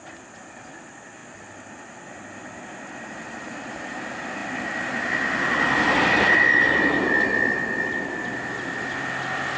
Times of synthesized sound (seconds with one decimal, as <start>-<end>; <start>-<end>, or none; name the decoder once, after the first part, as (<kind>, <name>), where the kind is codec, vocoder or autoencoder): none